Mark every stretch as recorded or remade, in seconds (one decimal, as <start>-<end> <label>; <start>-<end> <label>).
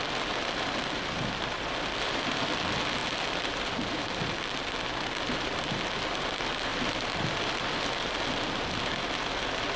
0.0-9.8 recorded